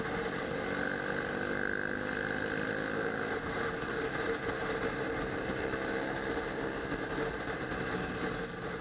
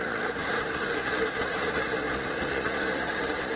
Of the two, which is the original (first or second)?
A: first